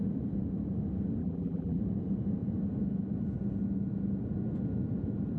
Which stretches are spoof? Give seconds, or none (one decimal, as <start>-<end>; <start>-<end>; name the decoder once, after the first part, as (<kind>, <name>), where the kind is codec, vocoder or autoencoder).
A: 1.2-1.8 (vocoder, BigVGAN v2)